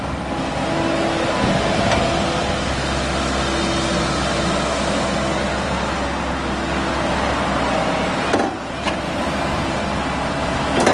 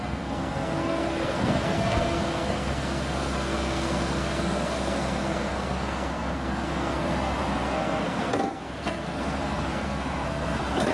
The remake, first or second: second